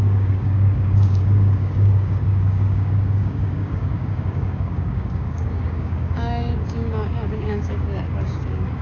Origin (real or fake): fake